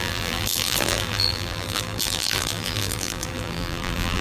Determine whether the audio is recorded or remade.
remade